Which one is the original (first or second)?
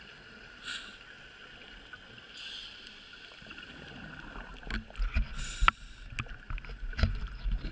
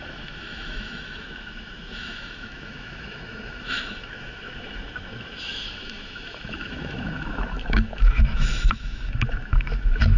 first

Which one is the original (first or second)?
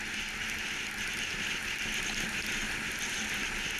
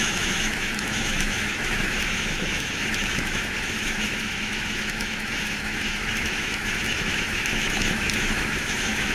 first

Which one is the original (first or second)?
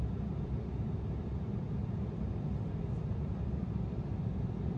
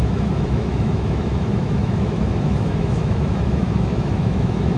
first